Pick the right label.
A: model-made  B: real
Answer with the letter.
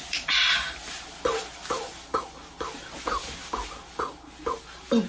B